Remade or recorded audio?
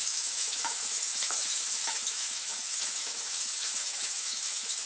remade